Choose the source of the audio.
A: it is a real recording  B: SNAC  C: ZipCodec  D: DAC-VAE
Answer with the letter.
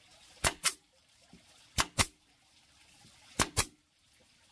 A